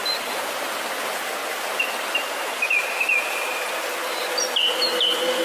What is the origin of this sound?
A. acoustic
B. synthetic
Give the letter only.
A